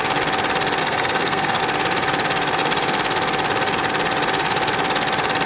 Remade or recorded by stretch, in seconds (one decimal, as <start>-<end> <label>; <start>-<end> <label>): 0.0-0.8 recorded; 0.8-1.6 remade; 1.6-5.5 recorded